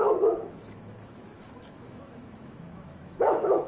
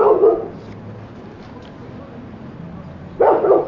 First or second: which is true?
second